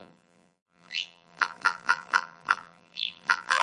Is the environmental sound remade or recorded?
remade